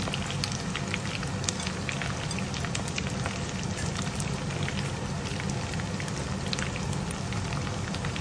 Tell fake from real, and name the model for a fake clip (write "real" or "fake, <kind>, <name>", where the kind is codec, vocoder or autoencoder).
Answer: real